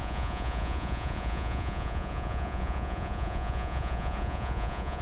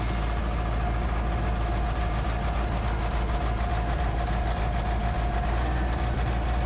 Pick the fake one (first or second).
first